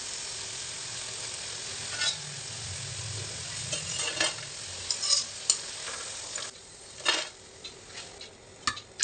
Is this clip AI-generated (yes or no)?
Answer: no